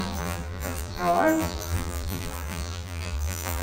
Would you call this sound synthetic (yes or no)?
yes